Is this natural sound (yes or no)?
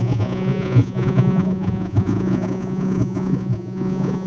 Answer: no